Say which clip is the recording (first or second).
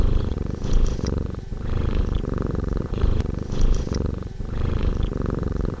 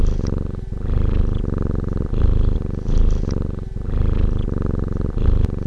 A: second